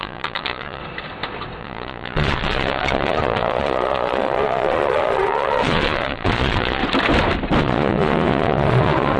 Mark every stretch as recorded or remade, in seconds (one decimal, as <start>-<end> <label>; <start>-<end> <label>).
0.0-0.8 remade; 0.8-1.6 recorded; 1.6-6.8 remade; 6.8-7.6 recorded; 7.6-9.2 remade